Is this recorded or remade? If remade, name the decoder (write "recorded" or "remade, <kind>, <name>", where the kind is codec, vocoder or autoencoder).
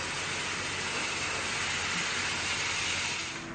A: recorded